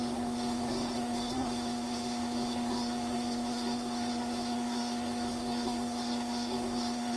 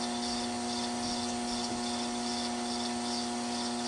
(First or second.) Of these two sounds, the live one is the second